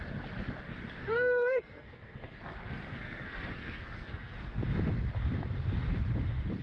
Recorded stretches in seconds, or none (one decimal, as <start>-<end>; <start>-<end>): 0.0-1.0; 4.6-6.6